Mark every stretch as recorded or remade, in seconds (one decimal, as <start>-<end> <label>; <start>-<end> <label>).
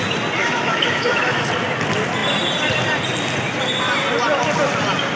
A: 0.0-0.4 recorded; 0.4-1.5 remade; 1.5-5.2 recorded